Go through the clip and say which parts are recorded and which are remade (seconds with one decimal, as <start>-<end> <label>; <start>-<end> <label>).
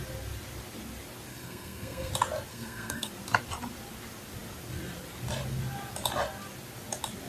0.0-1.3 recorded; 1.3-2.1 remade; 2.1-2.5 recorded; 2.5-3.1 remade; 3.1-7.3 recorded